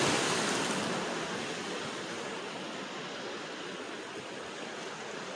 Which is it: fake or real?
real